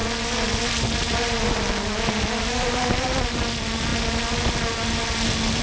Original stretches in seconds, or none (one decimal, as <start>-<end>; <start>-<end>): 0.0-5.6